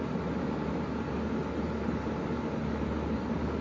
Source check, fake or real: real